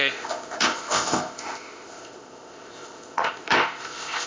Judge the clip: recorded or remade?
remade